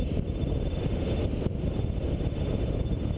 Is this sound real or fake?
real